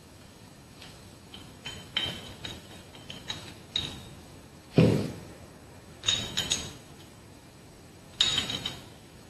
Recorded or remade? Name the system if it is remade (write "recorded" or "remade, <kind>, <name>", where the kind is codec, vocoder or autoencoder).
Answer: remade, autoencoder, DAC-VAE